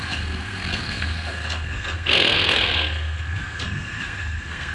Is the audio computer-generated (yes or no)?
yes